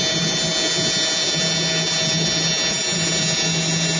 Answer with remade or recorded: recorded